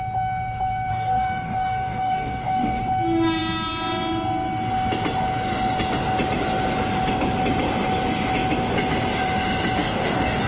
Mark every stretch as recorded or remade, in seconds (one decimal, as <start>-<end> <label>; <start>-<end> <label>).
0.0-0.9 recorded; 0.9-2.8 remade; 2.8-9.8 recorded; 9.8-10.5 remade